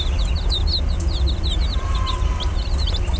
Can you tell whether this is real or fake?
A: real